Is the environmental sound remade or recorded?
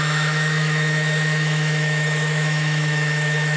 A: remade